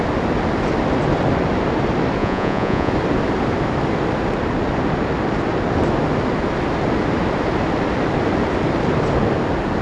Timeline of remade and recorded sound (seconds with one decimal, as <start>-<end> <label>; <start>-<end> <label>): 0.0-2.2 recorded; 2.2-2.9 remade; 2.9-9.8 recorded